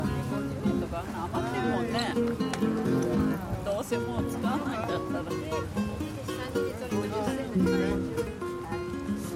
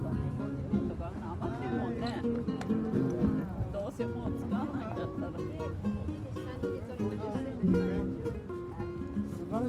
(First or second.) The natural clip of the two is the first